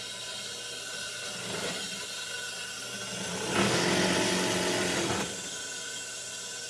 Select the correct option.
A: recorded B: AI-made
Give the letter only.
A